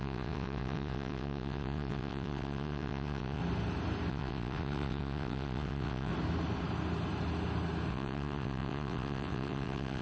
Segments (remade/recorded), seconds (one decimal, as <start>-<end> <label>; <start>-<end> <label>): 0.0-3.4 remade; 3.4-4.1 recorded; 4.1-6.1 remade; 6.1-7.9 recorded; 7.9-10.0 remade